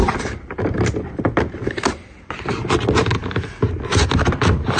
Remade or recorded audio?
recorded